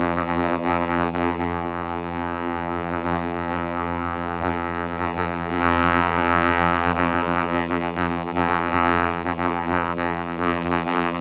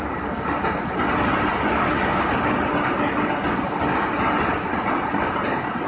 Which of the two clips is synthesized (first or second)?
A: first